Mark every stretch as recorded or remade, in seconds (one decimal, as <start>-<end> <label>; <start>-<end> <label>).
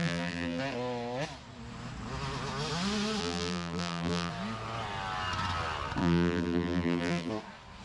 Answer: 0.0-0.6 remade; 0.6-3.2 recorded; 3.2-4.3 remade; 4.3-6.0 recorded; 6.0-7.3 remade; 7.3-7.8 recorded